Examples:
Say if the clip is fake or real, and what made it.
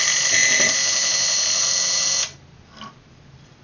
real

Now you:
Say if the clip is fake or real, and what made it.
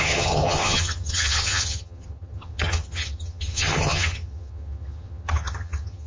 fake, vocoder, HiFi-GAN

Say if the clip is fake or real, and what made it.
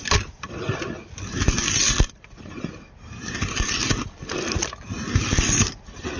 real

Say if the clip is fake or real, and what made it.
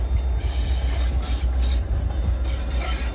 real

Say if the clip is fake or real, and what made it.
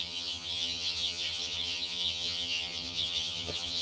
fake, vocoder, HiFi-GAN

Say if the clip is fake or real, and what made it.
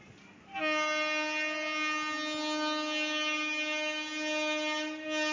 real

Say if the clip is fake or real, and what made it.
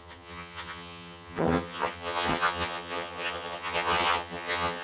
fake, vocoder, HiFi-GAN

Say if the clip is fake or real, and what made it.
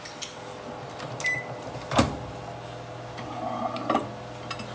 real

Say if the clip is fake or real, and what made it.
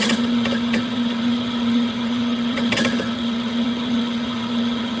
fake, vocoder, HiFi-GAN